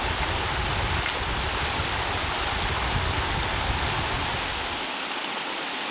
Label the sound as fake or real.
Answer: real